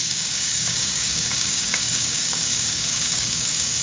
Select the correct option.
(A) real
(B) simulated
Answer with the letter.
B